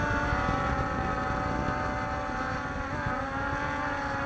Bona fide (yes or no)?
yes